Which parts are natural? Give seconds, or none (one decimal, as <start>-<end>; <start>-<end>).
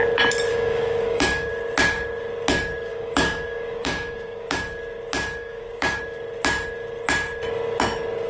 0.0-0.5; 1.5-2.9; 4.6-5.4; 6.0-8.3